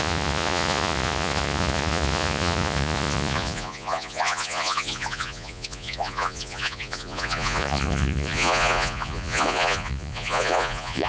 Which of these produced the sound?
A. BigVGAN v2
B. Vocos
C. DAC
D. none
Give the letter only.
B